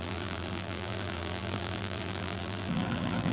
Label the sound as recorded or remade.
remade